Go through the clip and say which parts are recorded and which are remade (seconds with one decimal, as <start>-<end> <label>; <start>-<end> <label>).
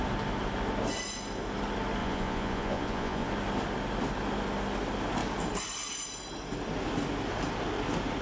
0.0-2.0 recorded; 2.0-3.3 remade; 3.3-8.2 recorded